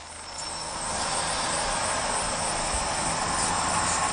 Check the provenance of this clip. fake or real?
real